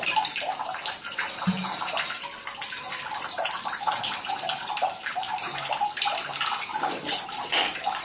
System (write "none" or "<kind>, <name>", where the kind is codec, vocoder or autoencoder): vocoder, BigVGAN v2